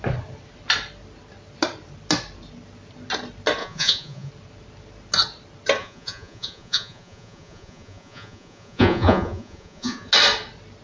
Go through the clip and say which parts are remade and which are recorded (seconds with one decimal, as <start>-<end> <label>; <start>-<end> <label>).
0.0-3.6 recorded; 3.6-4.3 remade; 4.3-5.8 recorded; 5.8-10.1 remade; 10.1-10.8 recorded